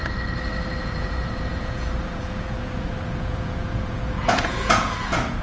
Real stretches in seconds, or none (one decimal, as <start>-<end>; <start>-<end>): 0.0-0.8